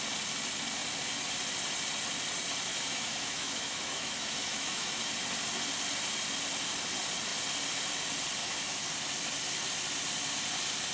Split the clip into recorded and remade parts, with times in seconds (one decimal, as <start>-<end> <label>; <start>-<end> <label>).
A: 0.0-2.7 recorded; 2.7-5.1 remade; 5.1-8.4 recorded; 8.4-8.9 remade; 8.9-10.9 recorded